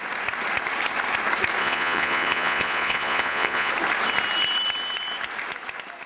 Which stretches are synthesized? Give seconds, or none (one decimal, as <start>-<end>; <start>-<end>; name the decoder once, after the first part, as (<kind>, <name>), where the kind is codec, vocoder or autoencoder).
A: 1.6-3.7 (vocoder, Vocos)